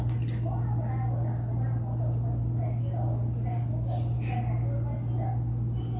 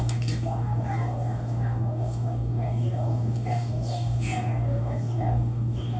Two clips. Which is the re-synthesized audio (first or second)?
second